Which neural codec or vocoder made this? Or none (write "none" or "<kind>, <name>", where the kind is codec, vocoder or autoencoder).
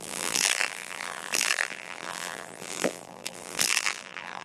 vocoder, BigVGAN v2